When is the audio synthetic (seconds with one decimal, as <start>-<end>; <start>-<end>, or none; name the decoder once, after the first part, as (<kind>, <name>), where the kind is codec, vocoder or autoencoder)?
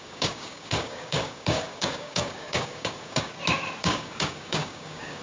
0.0-3.3 (codec, DAC); 3.8-5.2